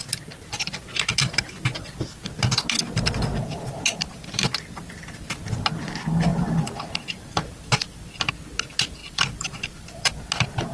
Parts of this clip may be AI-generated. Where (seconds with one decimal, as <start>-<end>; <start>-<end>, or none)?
6.3-8.3; 9.0-10.1